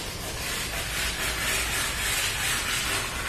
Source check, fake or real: real